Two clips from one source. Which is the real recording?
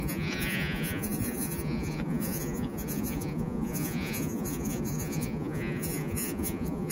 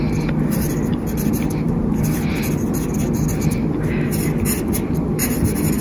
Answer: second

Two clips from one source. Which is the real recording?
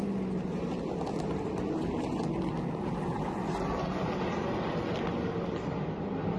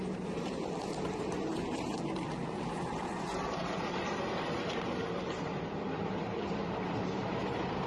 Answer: first